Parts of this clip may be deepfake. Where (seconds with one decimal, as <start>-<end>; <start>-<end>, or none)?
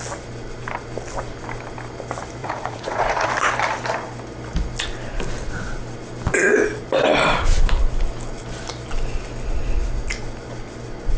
2.4-3.3